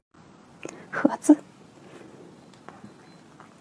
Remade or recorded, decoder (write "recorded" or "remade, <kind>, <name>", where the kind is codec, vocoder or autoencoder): recorded